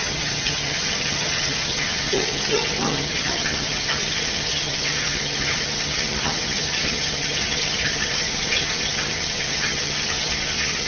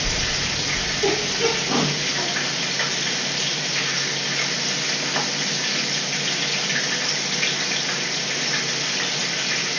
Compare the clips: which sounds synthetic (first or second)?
first